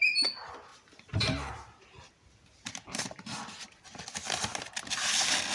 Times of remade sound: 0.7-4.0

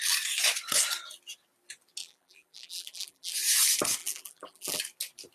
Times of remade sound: 2.0-3.3; 4.0-4.8